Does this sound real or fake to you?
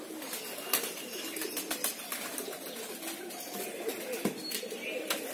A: real